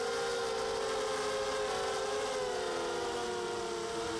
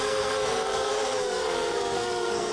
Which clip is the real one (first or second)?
first